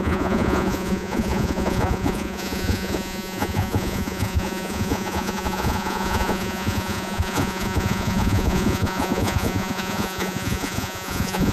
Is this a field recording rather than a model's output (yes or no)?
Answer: no